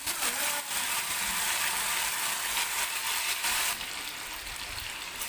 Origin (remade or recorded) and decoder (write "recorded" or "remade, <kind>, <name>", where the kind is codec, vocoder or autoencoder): recorded